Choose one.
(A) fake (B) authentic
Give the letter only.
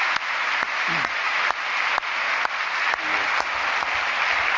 B